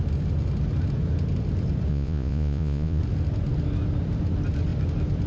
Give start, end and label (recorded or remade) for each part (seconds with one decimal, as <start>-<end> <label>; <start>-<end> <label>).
0.0-1.9 recorded; 1.9-3.0 remade; 3.0-5.3 recorded